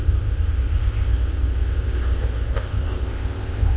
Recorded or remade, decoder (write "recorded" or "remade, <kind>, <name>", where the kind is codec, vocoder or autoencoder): remade, codec, ZipCodec